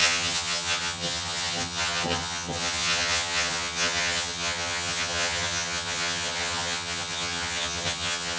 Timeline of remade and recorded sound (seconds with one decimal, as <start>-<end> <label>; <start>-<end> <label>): 0.0-8.4 remade